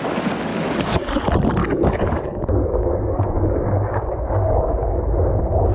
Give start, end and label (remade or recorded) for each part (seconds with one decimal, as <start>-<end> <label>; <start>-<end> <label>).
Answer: 0.0-0.5 recorded; 0.5-1.1 remade; 1.1-1.6 recorded; 1.6-5.0 remade; 5.0-5.7 recorded